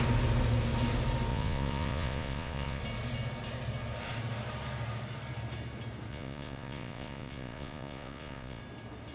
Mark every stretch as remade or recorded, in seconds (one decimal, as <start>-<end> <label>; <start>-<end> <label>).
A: 0.0-1.3 recorded; 1.3-2.8 remade; 2.8-6.1 recorded; 6.1-8.6 remade; 8.6-9.1 recorded